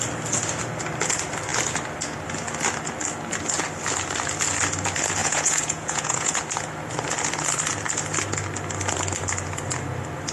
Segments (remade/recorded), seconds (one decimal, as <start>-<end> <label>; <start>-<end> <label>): 0.0-5.2 recorded; 5.2-6.4 remade; 6.4-10.3 recorded

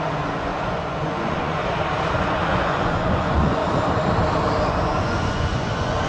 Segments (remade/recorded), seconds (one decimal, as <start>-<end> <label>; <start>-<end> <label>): 0.0-1.6 remade; 1.6-2.2 recorded; 2.2-3.6 remade; 3.6-4.7 recorded; 4.7-6.1 remade